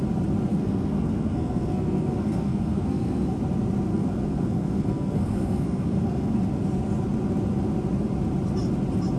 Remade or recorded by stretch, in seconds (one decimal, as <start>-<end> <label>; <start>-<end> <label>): 0.0-0.5 recorded; 0.5-3.4 remade; 3.4-3.9 recorded; 3.9-6.4 remade; 6.4-9.2 recorded